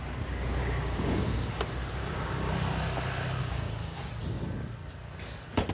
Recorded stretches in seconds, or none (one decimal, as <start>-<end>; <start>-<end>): 0.0-0.6; 1.6-2.0; 2.5-3.4; 4.0-5.7